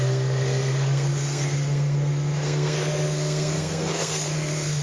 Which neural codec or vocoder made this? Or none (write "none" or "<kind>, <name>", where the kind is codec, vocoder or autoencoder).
codec, SNAC